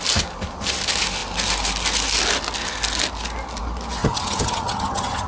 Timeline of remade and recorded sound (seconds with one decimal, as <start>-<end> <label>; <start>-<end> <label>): 0.0-4.0 recorded; 4.0-5.3 remade